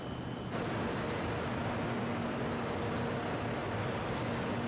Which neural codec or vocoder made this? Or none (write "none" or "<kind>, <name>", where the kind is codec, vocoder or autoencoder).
none